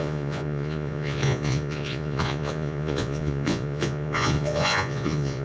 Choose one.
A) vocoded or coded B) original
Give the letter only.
A